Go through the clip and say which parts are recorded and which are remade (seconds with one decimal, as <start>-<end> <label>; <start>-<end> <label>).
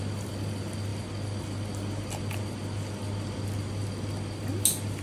0.0-5.0 recorded